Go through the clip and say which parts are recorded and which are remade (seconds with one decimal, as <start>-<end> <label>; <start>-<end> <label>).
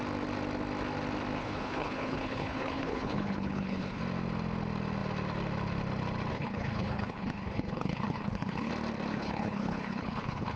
0.0-1.4 recorded; 1.4-4.0 remade; 4.0-6.3 recorded; 6.3-8.7 remade; 8.7-9.1 recorded; 9.1-10.6 remade